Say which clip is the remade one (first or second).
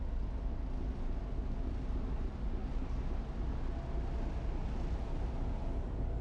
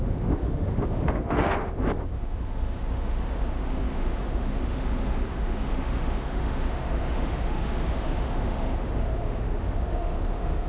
second